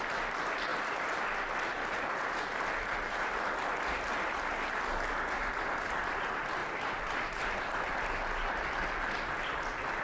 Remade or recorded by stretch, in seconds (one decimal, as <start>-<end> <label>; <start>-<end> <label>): 0.0-10.0 recorded